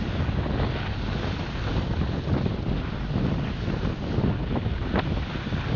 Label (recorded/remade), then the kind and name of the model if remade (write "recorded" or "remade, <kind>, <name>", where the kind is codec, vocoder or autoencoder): recorded